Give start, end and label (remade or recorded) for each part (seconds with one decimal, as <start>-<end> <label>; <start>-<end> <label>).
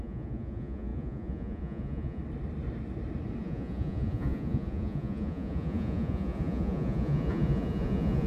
0.0-2.2 remade; 2.2-3.4 recorded; 3.4-8.3 remade